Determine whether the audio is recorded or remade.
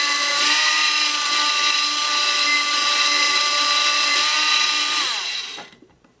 remade